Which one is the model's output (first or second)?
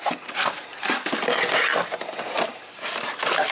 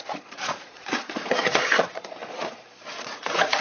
second